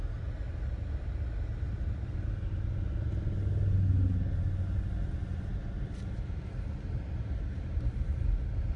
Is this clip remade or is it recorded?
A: recorded